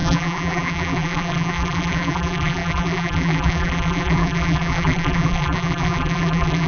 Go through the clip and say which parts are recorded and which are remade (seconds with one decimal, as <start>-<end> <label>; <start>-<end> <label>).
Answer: 0.0-6.7 remade